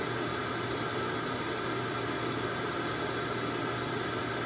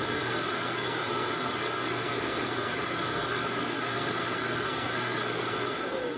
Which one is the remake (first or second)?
second